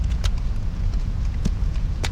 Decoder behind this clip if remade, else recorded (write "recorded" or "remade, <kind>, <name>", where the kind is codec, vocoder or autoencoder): remade, vocoder, Vocos